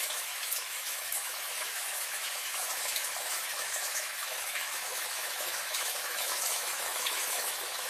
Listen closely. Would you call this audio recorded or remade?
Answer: remade